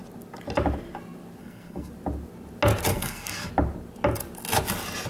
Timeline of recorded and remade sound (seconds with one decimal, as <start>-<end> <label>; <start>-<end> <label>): 0.0-1.4 recorded; 1.4-1.9 remade; 1.9-2.9 recorded; 2.9-3.5 remade; 3.5-5.1 recorded